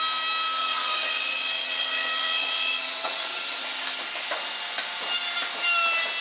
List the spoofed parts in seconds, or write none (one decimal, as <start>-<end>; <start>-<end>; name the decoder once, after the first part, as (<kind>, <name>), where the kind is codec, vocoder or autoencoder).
0.6-3.6 (vocoder, WaveNeXt)